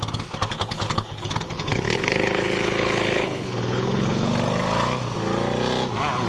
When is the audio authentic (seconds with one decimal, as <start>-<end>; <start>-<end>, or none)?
0.0-0.5; 4.3-6.3